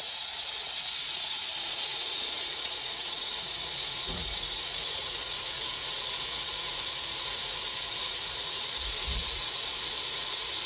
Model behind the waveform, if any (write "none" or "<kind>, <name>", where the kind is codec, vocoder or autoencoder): vocoder, Vocos